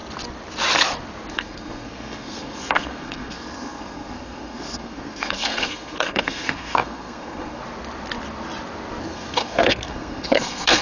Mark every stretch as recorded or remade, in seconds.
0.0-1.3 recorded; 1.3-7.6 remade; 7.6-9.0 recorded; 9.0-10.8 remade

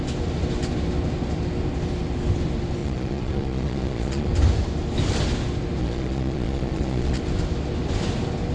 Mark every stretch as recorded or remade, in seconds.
0.0-2.8 recorded; 2.8-4.3 remade; 4.3-5.8 recorded; 5.8-7.2 remade; 7.2-8.5 recorded